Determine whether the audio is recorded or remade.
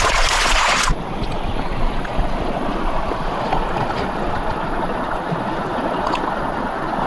remade